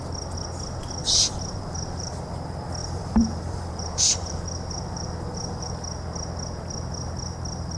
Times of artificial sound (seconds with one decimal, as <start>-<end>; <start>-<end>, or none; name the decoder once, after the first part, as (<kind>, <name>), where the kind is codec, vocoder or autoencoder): 1.0-2.1 (vocoder, BigVGAN v2); 2.8-5.7